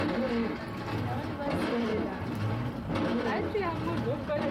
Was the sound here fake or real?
real